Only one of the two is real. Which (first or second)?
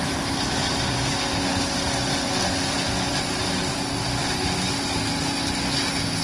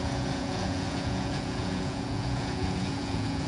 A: first